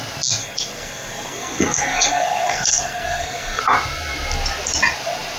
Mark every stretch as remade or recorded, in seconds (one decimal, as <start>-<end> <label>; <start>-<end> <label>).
0.0-0.4 recorded; 0.4-3.6 remade; 3.6-5.4 recorded